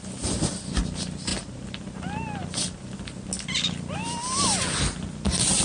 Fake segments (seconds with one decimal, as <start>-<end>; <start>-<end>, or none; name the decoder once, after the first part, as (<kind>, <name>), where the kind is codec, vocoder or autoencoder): none